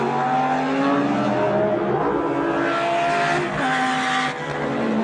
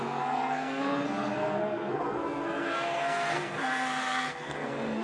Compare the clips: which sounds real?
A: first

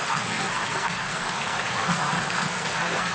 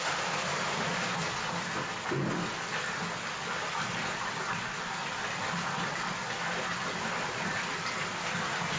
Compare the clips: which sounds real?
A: second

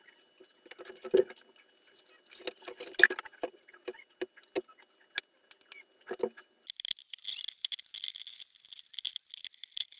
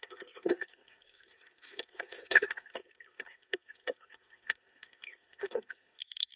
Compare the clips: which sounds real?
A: first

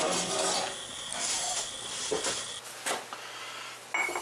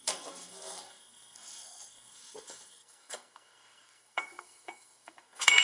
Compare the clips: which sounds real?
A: first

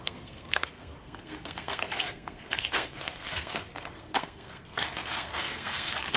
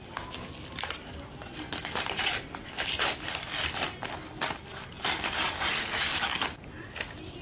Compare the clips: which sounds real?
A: second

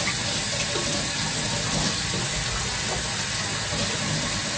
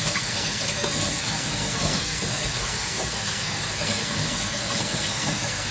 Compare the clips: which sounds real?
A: first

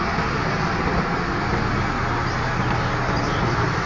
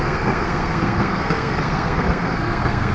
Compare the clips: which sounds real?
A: first